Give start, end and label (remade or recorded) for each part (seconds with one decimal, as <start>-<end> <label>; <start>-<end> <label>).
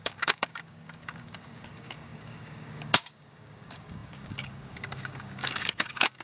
0.0-6.2 remade